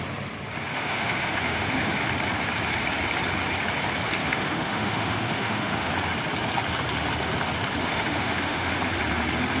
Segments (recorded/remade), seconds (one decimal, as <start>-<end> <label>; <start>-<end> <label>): 0.0-0.7 recorded; 0.7-2.0 remade; 2.0-4.2 recorded; 4.2-5.9 remade; 5.9-7.8 recorded; 7.8-8.7 remade; 8.7-9.6 recorded